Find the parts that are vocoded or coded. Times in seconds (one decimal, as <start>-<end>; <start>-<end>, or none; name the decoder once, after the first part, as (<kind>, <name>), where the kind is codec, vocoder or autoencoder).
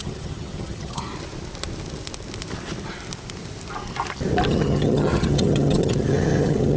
0.0-1.1 (vocoder, HiFi-GAN); 4.5-6.8